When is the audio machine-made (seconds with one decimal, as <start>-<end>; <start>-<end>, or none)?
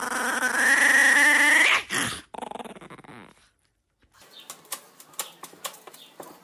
none